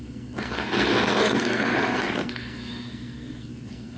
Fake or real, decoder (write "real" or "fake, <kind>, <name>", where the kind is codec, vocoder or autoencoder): fake, codec, SNAC